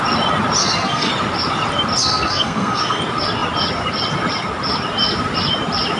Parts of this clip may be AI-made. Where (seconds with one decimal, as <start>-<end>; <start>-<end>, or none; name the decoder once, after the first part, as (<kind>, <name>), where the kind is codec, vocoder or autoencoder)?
0.6-1.1 (codec, SNAC); 2.0-3.0